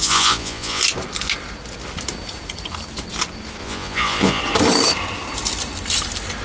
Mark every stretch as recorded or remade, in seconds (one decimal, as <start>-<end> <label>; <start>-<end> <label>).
0.0-0.8 remade; 0.8-3.6 recorded; 3.6-4.4 remade; 4.4-6.4 recorded